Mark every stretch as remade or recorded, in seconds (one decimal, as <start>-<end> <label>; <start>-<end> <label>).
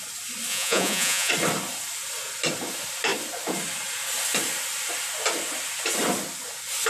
0.0-0.5 recorded; 0.5-1.3 remade; 1.3-6.9 recorded